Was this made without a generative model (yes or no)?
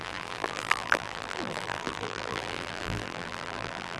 no